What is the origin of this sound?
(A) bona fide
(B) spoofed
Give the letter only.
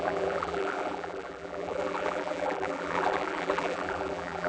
B